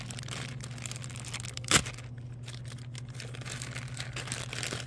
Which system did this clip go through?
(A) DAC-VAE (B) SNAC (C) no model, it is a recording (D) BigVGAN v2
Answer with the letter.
C